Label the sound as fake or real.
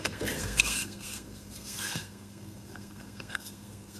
fake